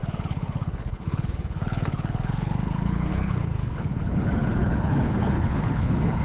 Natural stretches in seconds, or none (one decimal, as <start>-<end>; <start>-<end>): none